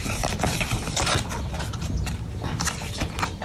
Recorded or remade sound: recorded